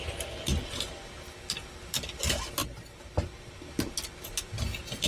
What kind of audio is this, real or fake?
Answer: real